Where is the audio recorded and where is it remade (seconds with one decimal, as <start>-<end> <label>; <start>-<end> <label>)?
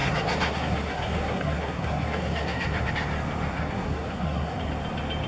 0.0-2.9 remade; 2.9-3.5 recorded; 3.5-4.7 remade; 4.7-5.3 recorded